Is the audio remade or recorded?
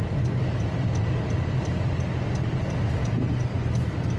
recorded